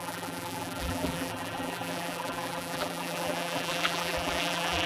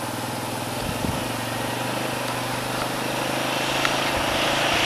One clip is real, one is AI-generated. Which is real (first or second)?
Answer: second